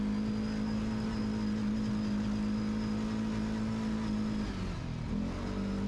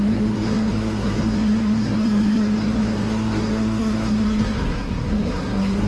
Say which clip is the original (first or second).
first